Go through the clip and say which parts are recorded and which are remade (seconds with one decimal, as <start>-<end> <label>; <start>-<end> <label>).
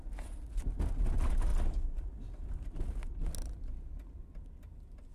0.0-5.1 recorded